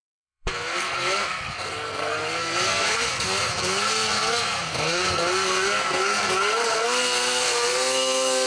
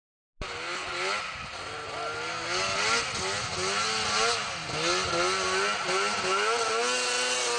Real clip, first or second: second